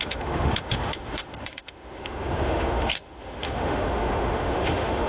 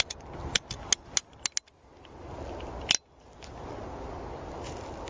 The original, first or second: second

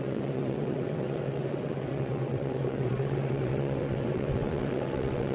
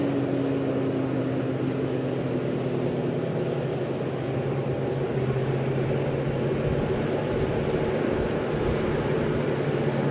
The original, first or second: second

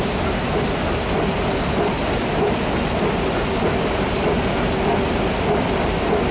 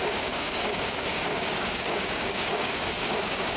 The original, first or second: first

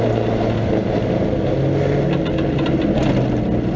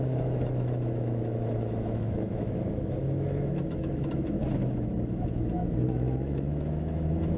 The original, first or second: first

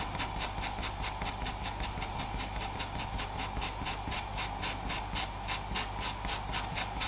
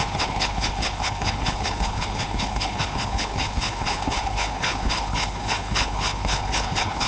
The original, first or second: first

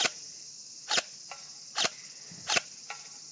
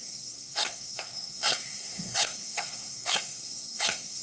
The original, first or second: first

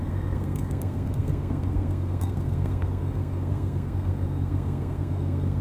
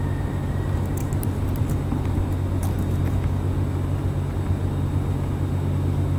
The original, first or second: second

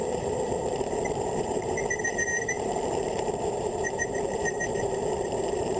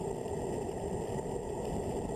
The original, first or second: second